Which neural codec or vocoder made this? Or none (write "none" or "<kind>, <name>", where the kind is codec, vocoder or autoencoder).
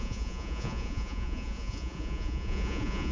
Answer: vocoder, Vocos